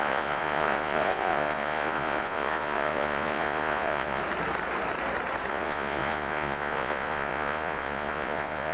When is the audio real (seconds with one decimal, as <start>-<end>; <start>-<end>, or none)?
4.2-5.5